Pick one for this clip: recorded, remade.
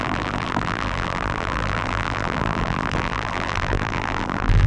remade